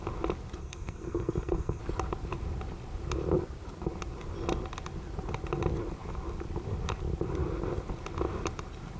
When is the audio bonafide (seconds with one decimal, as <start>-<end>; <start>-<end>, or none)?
0.0-0.6; 1.8-9.0